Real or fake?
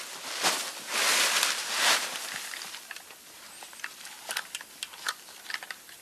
real